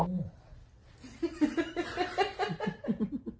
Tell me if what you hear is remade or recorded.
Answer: recorded